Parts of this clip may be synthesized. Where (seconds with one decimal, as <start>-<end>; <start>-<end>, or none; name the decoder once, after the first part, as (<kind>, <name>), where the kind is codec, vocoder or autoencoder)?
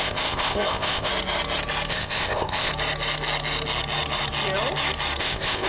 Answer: 0.0-1.1 (codec, ZipCodec); 1.9-2.7; 5.2-5.7